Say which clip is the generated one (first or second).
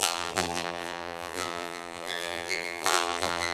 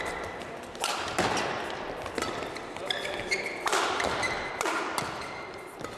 first